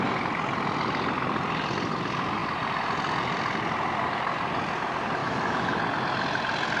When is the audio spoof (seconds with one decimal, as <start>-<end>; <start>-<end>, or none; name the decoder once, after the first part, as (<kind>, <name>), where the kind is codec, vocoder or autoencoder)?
5.2-5.8 (autoencoder, DAC-VAE)